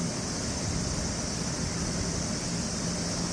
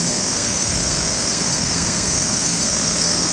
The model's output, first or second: second